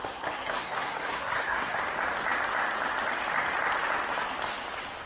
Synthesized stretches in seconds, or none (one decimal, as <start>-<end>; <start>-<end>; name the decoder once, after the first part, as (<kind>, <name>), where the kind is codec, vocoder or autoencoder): 0.0-1.8 (codec, SNAC)